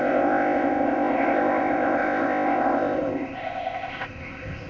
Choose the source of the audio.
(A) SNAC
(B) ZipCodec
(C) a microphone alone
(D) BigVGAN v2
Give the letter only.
B